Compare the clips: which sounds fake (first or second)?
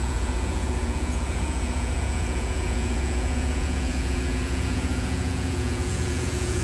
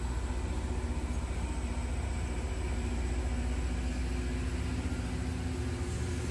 first